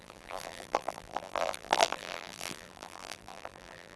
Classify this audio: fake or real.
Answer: fake